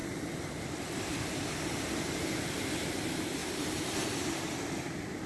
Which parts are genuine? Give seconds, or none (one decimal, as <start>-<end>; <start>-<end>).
0.0-3.4; 4.8-5.3